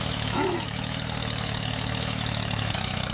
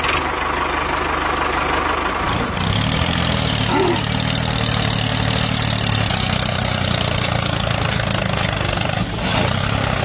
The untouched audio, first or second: second